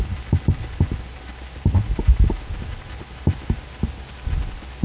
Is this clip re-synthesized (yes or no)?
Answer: no